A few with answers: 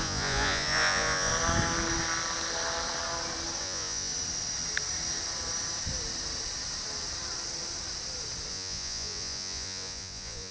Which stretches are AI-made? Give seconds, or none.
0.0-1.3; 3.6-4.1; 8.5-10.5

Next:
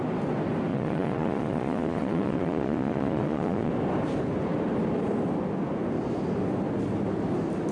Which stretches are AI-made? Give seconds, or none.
0.7-3.7

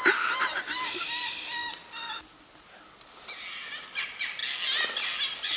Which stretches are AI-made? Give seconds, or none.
none

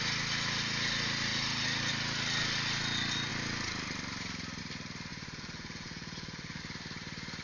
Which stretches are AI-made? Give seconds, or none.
5.1-6.6

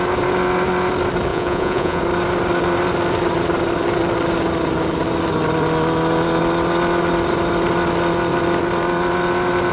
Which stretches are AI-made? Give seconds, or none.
1.3-2.0